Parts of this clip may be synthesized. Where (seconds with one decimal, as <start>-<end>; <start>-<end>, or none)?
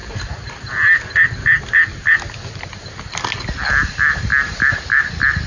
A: none